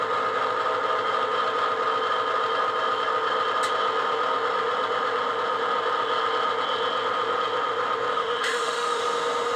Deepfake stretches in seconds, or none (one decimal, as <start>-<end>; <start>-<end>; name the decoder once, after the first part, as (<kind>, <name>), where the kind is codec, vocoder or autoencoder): 8.1-9.0 (autoencoder, DAC-VAE)